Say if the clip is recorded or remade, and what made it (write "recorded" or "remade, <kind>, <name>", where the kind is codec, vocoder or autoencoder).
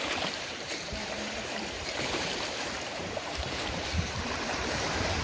remade, vocoder, BigVGAN v2